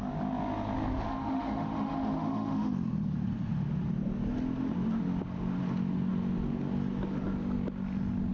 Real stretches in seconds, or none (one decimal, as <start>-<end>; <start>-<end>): 0.0-0.9; 2.7-8.3